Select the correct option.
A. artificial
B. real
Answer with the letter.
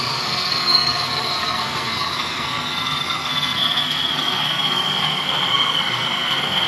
A